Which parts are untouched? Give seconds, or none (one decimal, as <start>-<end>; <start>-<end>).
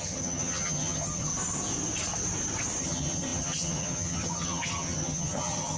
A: 1.3-2.8